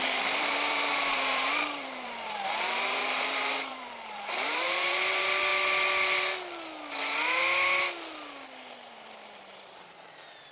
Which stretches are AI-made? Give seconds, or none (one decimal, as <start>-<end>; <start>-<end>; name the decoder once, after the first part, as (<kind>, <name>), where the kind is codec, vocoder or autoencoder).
0.0-5.5 (vocoder, BigVGAN v2); 8.9-10.5